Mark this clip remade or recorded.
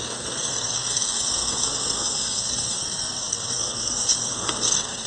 remade